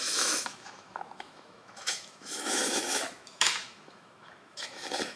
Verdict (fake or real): fake